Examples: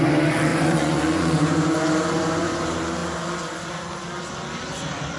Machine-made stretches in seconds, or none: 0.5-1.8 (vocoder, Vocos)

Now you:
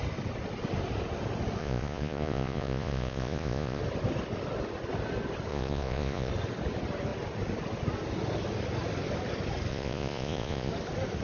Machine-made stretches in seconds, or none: 1.6-3.8 (vocoder, Vocos); 5.5-6.3; 9.7-10.7

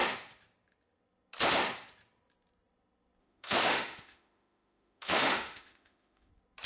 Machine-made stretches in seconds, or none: 3.2-6.3 (autoencoder, DAC-VAE)